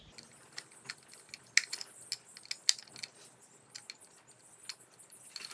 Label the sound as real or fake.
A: real